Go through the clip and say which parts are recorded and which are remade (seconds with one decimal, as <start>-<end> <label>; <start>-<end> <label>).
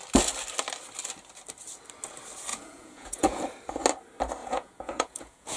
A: 0.0-2.5 recorded; 2.5-3.4 remade; 3.4-4.4 recorded; 4.4-5.6 remade